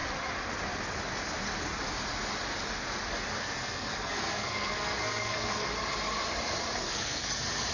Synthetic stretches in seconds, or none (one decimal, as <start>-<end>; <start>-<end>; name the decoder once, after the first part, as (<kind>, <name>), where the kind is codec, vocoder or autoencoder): 3.4-5.7 (codec, SNAC); 6.8-7.3